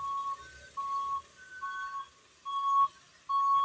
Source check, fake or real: real